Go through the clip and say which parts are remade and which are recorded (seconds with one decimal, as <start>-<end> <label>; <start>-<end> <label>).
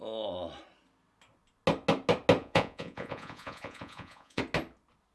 0.0-2.4 recorded; 2.4-4.4 remade; 4.4-5.1 recorded